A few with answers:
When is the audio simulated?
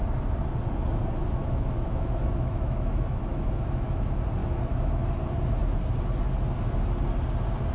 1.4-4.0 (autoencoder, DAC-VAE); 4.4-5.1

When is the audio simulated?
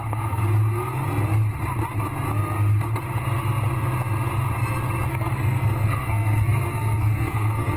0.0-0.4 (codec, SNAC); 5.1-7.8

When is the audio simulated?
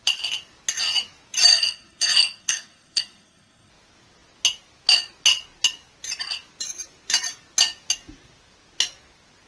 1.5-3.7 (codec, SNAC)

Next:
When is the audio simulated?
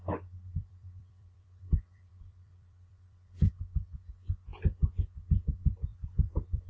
0.5-3.5 (vocoder, BigVGAN v2); 5.9-6.7